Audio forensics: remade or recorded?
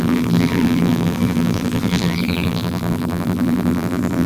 remade